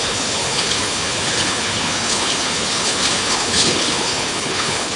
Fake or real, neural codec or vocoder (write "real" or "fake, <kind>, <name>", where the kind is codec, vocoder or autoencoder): fake, codec, HILCodec